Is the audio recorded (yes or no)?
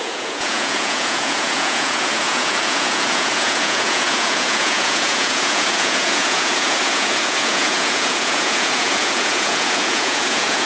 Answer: no